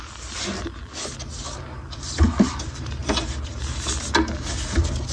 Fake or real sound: real